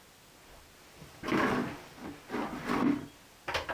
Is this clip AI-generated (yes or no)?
no